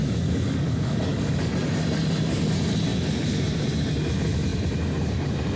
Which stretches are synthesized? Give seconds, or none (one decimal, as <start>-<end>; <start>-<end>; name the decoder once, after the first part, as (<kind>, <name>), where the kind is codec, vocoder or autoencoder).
0.0-1.5 (codec, DAC)

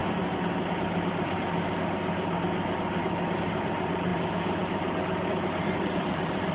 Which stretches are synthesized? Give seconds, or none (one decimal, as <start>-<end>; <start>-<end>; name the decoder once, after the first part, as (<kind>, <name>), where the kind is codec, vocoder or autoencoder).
3.5-4.1 (vocoder, BigVGAN v2); 5.3-6.5